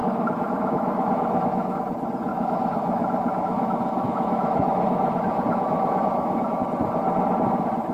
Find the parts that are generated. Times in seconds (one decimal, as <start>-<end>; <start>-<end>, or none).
0.0-1.8; 2.3-6.6